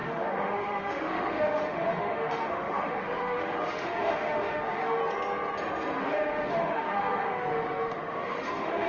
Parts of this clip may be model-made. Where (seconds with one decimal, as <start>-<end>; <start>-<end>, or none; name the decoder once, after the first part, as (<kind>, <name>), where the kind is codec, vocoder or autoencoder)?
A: 0.0-5.0 (autoencoder, DAC-VAE); 6.0-8.9